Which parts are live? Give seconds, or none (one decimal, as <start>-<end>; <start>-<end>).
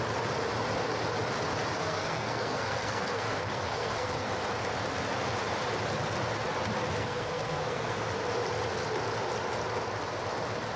0.0-1.8; 4.3-7.0; 8.0-10.8